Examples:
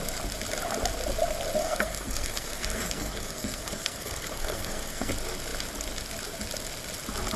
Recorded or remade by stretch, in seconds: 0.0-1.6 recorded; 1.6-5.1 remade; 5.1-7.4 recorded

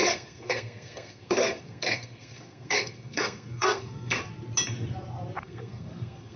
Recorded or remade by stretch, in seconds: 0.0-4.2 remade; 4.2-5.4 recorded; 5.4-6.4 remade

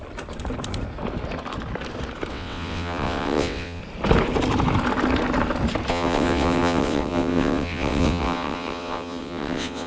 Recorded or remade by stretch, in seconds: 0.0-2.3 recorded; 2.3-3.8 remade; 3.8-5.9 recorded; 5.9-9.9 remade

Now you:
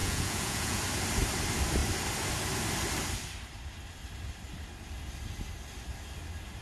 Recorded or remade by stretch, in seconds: 0.0-0.8 remade; 0.8-6.6 recorded

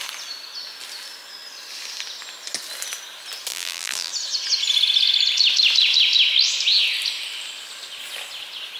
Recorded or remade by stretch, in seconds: 0.0-3.5 recorded; 3.5-4.1 remade; 4.1-8.8 recorded

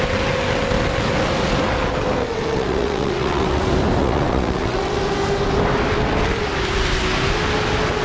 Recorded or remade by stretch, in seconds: 0.0-2.2 recorded; 2.2-3.6 remade; 3.6-4.0 recorded; 4.0-5.0 remade; 5.0-8.0 recorded